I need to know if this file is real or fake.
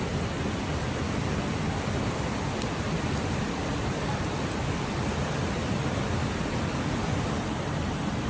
fake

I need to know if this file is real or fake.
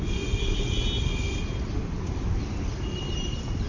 real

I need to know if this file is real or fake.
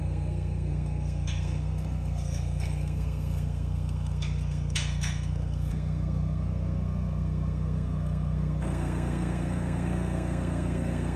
fake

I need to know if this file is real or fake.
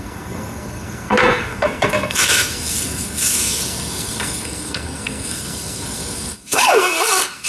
fake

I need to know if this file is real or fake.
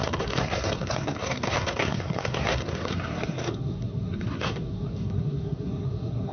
fake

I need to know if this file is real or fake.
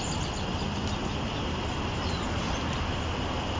real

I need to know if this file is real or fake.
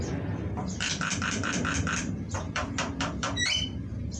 fake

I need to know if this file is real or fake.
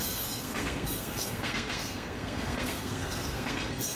fake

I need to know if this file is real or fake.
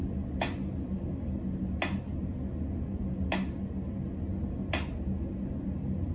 real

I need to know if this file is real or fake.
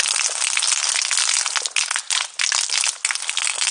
real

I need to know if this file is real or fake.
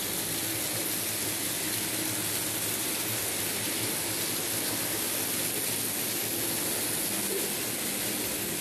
real